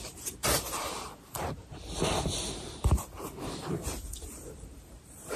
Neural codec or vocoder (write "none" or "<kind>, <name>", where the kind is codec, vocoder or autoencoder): vocoder, BigVGAN v2